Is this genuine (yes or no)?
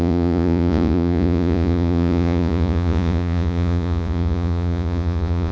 no